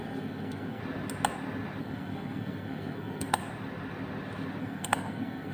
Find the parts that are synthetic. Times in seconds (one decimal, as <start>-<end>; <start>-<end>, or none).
0.0-0.8; 1.8-3.4; 4.6-5.5